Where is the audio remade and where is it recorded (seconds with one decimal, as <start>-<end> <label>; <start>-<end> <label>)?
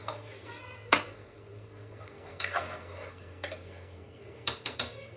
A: 0.0-5.2 remade